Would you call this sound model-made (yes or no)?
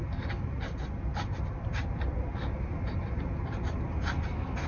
no